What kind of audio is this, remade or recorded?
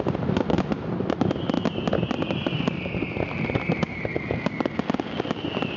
recorded